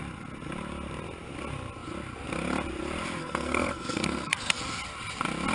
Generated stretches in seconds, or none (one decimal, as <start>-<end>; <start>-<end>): 3.2-4.6